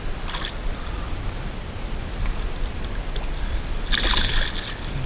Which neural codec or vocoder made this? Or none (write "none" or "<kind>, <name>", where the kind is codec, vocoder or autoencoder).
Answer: none